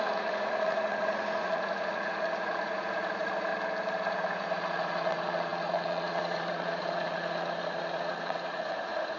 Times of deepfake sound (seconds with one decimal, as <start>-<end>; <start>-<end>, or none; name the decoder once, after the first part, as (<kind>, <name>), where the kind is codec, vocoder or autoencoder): 0.0-3.5 (vocoder, Vocos); 4.1-9.2